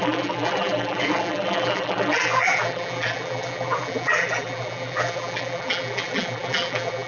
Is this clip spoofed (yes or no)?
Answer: yes